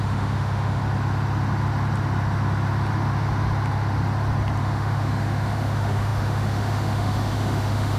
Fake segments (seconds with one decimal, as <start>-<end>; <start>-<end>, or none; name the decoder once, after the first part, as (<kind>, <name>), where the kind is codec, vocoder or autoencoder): 0.0-0.8 (autoencoder, DAC-VAE); 4.6-8.0